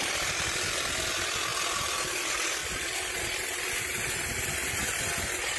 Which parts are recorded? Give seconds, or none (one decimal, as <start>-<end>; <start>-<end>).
0.0-5.6